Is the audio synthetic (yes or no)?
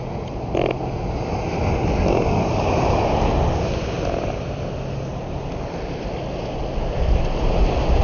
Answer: no